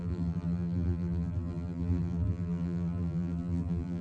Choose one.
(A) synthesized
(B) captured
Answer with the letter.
A